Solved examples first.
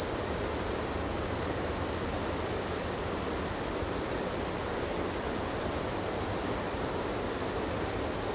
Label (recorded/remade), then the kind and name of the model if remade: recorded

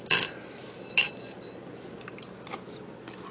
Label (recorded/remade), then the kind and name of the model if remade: recorded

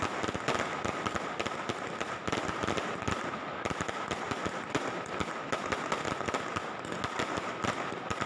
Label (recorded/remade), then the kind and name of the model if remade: recorded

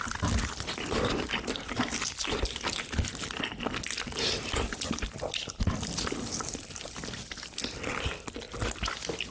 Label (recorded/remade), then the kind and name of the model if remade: recorded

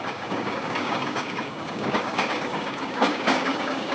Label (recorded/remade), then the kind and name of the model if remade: remade, codec, DAC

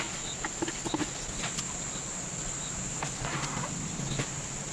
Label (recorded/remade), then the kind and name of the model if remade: recorded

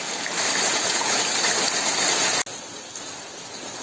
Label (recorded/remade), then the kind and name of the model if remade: recorded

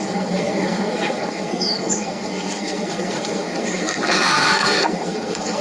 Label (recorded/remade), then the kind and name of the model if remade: remade, codec, SNAC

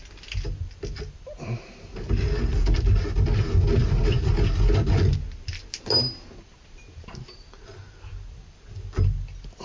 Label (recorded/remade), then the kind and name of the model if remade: recorded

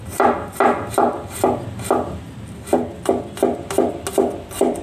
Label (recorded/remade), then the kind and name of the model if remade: recorded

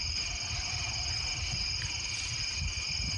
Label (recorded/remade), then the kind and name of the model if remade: recorded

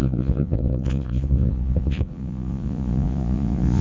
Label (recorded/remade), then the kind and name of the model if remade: remade, vocoder, Vocos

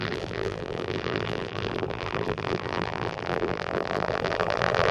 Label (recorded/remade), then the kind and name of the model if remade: remade, vocoder, BigVGAN v2